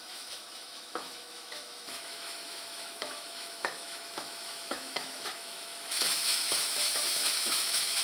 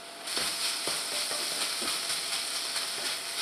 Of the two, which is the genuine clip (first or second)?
second